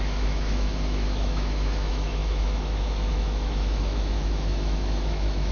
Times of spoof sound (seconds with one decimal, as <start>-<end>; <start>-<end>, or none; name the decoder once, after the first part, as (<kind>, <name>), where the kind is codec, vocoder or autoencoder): 0.0-5.5 (autoencoder, DAC-VAE)